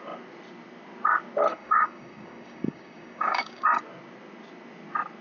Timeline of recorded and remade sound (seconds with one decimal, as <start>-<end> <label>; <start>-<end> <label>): 0.0-1.5 recorded; 1.5-3.8 remade; 3.8-5.2 recorded